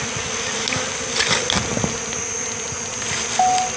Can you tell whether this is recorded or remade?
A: recorded